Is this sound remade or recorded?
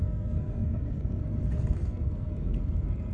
remade